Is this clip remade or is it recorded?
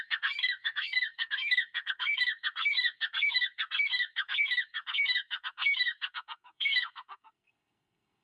remade